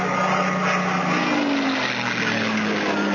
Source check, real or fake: real